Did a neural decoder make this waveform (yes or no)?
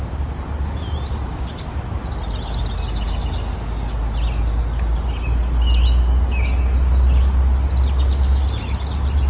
no